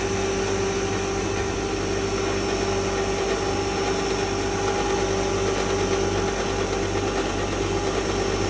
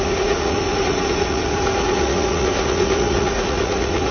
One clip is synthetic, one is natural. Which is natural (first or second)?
first